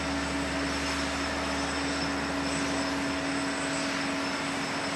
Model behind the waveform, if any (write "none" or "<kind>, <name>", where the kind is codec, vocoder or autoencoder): none